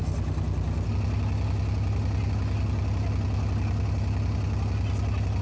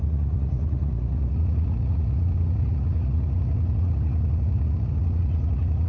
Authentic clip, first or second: first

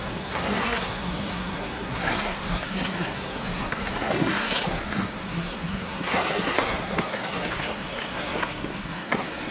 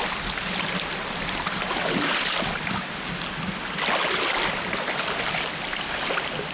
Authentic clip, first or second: second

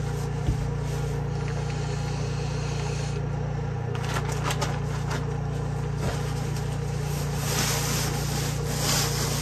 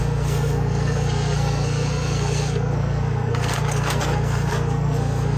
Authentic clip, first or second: first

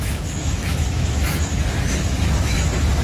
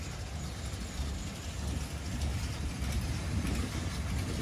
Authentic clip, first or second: second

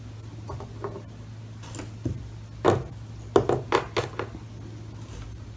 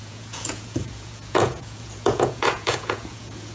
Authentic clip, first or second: first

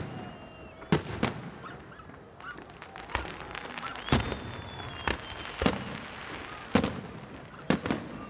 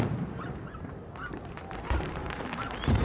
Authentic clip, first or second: first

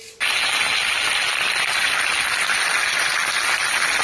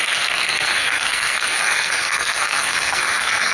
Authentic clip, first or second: first